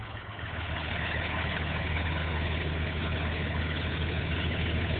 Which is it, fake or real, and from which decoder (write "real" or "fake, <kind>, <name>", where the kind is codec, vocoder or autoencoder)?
fake, codec, HILCodec